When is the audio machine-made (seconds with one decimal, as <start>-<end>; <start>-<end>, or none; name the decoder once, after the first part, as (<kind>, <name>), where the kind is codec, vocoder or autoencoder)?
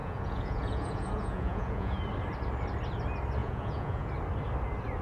0.0-2.0 (vocoder, Vocos); 3.4-4.1